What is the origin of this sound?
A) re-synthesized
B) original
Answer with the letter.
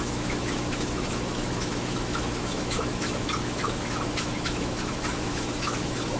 A